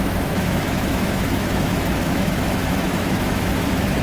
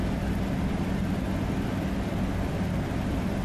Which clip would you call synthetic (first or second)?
first